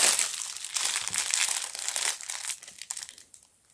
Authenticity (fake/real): fake